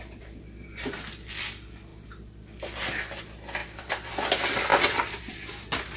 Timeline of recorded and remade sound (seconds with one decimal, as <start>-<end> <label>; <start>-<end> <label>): 0.0-3.6 recorded; 3.6-4.1 remade; 4.1-6.0 recorded